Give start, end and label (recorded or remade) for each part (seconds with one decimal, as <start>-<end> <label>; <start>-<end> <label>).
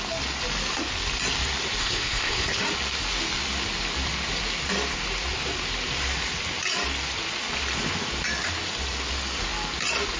0.0-1.8 recorded; 1.8-2.6 remade; 2.6-10.2 recorded